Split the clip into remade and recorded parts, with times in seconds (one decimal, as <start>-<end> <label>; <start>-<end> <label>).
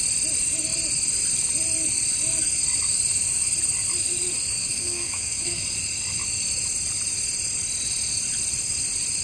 0.0-4.6 recorded; 4.6-5.6 remade; 5.6-9.2 recorded